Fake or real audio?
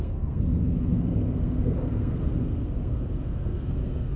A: fake